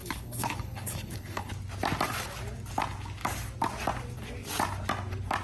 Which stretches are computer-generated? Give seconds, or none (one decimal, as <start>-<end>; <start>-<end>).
0.0-1.5